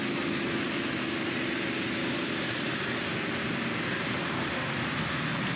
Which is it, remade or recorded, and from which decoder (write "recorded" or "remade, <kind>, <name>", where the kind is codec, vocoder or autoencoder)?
recorded